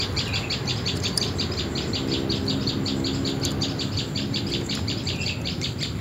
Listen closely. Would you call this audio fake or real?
real